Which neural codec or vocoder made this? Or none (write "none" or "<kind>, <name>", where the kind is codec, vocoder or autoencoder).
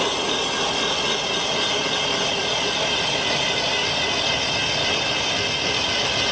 none